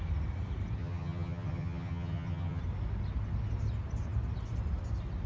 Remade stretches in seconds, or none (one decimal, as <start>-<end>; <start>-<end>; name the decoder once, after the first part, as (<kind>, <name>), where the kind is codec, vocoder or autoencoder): 0.8-2.6 (vocoder, HiFi-GAN)